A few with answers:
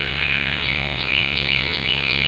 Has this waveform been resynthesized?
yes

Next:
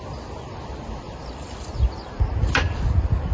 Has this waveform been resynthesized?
no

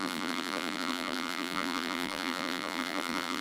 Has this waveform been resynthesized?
yes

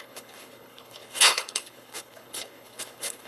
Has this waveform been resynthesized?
yes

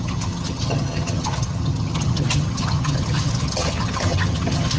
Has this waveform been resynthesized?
yes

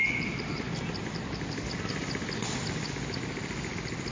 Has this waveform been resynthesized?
no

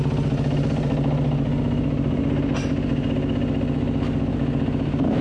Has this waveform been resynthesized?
no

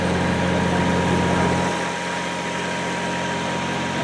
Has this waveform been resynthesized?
no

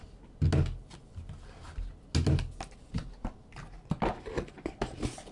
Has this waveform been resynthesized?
no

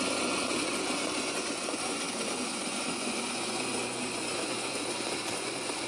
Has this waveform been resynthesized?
yes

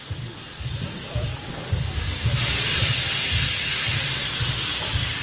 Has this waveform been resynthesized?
yes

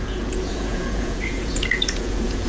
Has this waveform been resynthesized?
yes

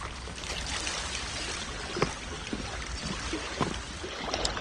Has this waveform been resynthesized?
no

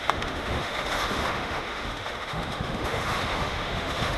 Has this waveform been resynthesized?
yes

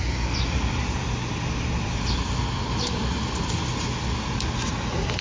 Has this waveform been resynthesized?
no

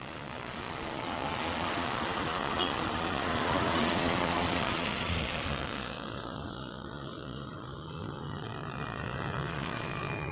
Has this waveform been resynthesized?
yes